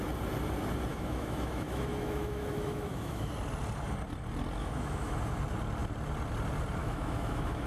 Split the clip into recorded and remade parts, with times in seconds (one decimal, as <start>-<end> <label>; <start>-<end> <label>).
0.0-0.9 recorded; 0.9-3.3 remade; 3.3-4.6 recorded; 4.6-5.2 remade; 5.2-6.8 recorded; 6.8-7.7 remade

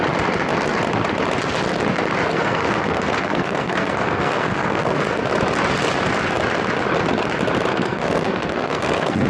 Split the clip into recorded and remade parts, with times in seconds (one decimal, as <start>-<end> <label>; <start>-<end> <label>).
0.0-2.3 recorded; 2.3-5.2 remade; 5.2-7.7 recorded; 7.7-9.3 remade

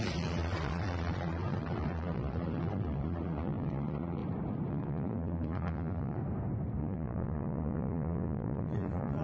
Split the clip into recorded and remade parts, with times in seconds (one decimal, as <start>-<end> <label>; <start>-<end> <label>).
0.0-4.2 remade; 4.2-4.7 recorded; 4.7-6.2 remade; 6.2-6.8 recorded; 6.8-9.2 remade

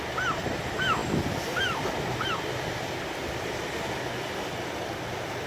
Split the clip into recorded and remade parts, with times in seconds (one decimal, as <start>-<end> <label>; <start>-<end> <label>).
0.0-5.5 recorded

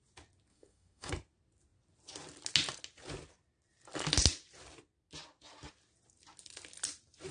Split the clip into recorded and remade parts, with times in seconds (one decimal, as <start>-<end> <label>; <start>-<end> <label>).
0.0-0.5 recorded; 0.5-1.1 remade; 1.1-7.3 recorded

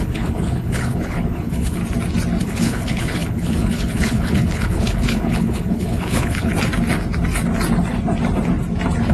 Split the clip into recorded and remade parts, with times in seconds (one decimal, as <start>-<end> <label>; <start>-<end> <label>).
0.0-1.8 remade; 1.8-2.4 recorded; 2.4-6.5 remade; 6.5-9.1 recorded

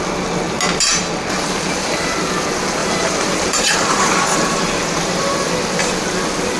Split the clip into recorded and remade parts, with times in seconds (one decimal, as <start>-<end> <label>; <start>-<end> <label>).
0.0-2.8 recorded; 2.8-5.5 remade; 5.5-6.6 recorded

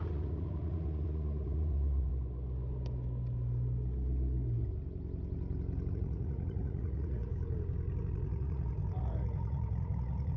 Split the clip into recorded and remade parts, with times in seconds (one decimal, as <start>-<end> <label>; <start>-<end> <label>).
0.0-2.1 remade; 2.1-5.9 recorded; 5.9-7.3 remade; 7.3-8.0 recorded; 8.0-10.4 remade